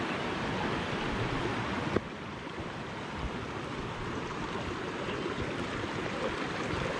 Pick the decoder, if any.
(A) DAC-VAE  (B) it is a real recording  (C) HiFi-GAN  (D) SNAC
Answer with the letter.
B